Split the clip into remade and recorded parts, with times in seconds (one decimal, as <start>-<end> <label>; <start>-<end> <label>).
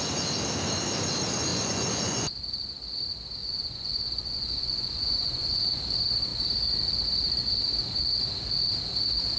0.0-1.5 recorded; 1.5-2.3 remade; 2.3-3.4 recorded; 3.4-5.8 remade; 5.8-9.4 recorded